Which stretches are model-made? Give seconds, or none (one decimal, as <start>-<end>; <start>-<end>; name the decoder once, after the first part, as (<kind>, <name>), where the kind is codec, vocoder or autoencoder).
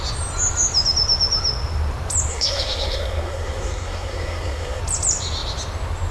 2.3-4.8 (codec, SNAC)